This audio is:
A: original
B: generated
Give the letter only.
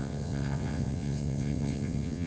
B